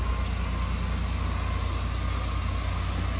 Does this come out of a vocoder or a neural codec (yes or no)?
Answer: no